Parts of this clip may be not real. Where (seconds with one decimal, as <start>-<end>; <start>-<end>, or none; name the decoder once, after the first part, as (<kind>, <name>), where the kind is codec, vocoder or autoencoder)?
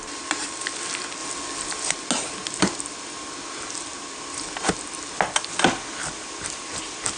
none